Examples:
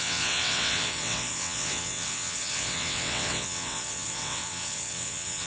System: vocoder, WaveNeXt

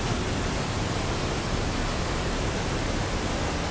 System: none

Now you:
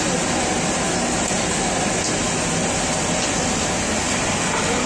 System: none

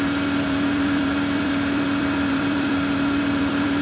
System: vocoder, BigVGAN v2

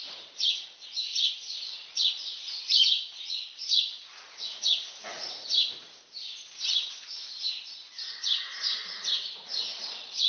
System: vocoder, Vocos